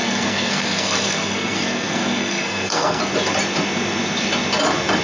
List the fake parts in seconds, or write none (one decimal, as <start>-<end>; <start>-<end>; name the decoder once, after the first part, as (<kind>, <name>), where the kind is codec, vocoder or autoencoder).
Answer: 0.0-3.0 (codec, SNAC)

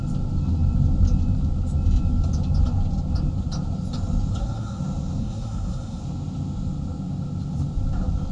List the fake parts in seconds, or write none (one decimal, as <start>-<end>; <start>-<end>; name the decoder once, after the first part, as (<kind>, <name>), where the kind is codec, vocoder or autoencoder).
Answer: 4.3-4.8 (codec, SNAC); 5.2-6.0

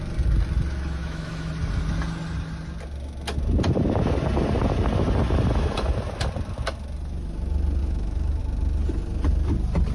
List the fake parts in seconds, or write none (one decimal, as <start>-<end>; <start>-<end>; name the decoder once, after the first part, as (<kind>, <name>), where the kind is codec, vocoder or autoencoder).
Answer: 1.0-1.5 (autoencoder, DAC-VAE); 7.8-8.4

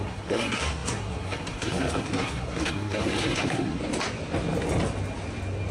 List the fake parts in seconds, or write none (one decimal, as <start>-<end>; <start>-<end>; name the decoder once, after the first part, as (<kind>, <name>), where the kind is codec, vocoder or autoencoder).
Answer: 0.0-3.8 (codec, SNAC)